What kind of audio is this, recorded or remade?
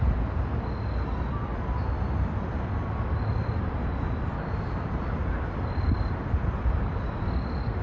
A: recorded